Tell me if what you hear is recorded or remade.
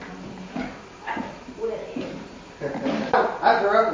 recorded